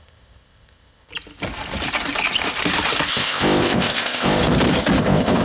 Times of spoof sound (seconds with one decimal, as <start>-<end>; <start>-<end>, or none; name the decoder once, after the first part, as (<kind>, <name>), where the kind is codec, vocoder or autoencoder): 0.0-1.1 (codec, ZipCodec); 3.1-4.4; 5.0-5.4